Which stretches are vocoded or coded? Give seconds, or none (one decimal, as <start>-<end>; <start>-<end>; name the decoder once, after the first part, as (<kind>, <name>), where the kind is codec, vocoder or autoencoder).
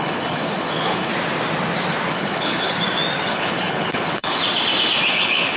0.0-1.1 (codec, HILCodec); 2.1-2.7; 3.3-4.4; 5.1-5.6